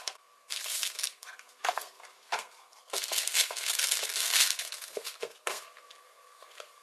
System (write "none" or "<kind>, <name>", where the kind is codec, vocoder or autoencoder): codec, SNAC